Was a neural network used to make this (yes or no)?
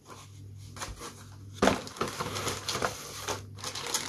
no